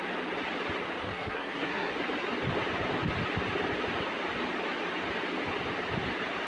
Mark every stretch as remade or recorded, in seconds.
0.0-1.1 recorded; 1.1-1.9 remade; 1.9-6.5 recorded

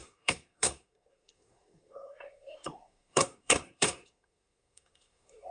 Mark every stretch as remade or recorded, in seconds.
0.0-5.5 remade